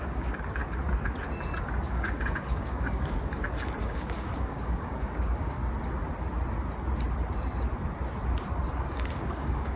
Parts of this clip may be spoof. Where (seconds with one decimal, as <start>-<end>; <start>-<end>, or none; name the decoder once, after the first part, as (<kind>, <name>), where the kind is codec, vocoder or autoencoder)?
0.0-0.6 (codec, DAC); 1.6-3.3; 3.8-5.6; 8.9-9.8